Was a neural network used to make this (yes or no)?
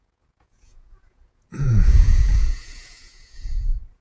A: yes